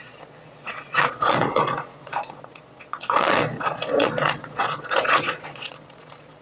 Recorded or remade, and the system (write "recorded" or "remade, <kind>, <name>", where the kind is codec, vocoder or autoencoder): remade, vocoder, Vocos